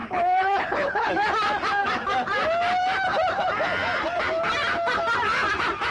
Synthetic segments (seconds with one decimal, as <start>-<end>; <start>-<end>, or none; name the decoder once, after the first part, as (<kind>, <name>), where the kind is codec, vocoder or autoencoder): 0.0-1.1 (codec, HILCodec)

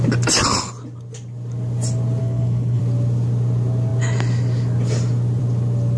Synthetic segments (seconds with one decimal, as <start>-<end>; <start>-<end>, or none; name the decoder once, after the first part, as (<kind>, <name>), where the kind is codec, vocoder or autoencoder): 2.2-2.8 (codec, HILCodec)

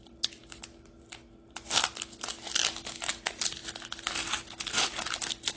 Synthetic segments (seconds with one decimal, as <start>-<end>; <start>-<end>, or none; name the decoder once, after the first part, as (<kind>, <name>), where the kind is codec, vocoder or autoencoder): none

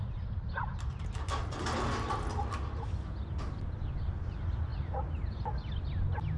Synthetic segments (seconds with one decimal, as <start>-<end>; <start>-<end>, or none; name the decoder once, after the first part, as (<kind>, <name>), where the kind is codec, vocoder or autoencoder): none

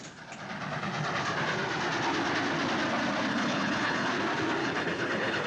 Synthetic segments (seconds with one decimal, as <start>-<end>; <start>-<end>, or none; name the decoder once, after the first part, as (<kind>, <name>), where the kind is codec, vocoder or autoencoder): 3.3-4.1 (codec, HILCodec); 4.6-5.5

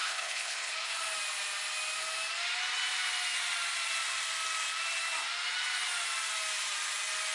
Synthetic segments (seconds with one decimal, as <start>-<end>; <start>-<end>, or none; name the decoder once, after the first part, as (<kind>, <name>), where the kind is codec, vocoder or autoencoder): 0.0-0.7 (codec, HILCodec)

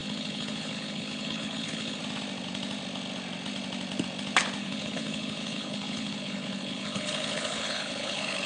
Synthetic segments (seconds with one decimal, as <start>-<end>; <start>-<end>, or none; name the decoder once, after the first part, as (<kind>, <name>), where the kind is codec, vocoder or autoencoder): 0.0-2.0 (codec, HILCodec); 4.6-8.5

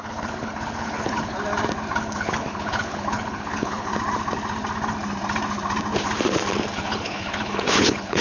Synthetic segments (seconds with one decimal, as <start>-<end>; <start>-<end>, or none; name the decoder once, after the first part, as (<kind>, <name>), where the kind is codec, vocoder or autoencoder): 0.0-1.3 (codec, HILCodec); 2.0-3.9; 6.7-8.2